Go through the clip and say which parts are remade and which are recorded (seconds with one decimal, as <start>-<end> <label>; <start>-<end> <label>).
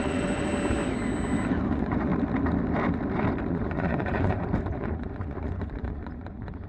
0.0-0.5 remade; 0.5-1.7 recorded; 1.7-2.1 remade; 2.1-3.5 recorded; 3.5-6.7 remade